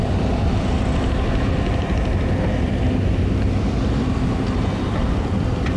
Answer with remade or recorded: recorded